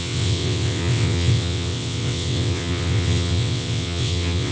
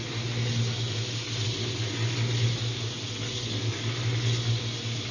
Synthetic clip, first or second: first